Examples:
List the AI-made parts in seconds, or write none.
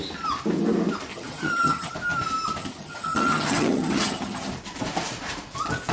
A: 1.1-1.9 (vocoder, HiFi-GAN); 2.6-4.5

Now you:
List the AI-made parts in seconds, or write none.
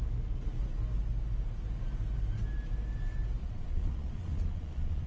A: 3.4-5.1 (vocoder, Vocos)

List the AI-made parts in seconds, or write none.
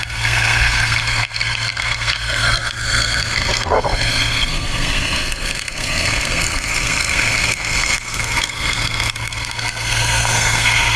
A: 0.0-11.0 (codec, SNAC)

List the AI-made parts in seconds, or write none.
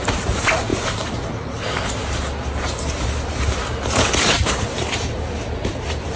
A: none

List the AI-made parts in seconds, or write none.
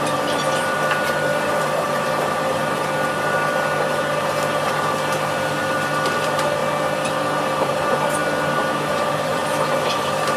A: 0.0-2.6 (vocoder, BigVGAN v2); 5.6-6.6; 7.4-8.2; 8.9-9.4; 10.0-10.4